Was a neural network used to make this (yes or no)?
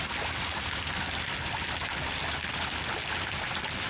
no